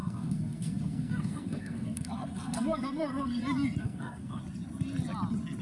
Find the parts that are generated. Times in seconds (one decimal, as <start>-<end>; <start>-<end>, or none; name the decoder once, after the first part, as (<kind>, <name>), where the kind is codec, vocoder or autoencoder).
0.0-3.4 (codec, SNAC); 3.8-4.4